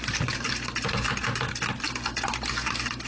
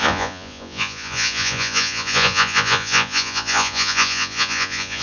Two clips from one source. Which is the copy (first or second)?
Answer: second